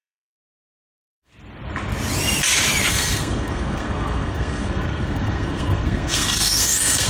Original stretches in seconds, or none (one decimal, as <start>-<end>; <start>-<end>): 1.3-2.9